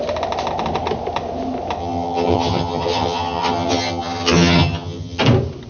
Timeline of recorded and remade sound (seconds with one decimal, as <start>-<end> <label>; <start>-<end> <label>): 0.0-1.8 recorded; 1.8-5.2 remade; 5.2-5.7 recorded